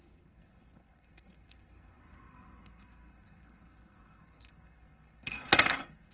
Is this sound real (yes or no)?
no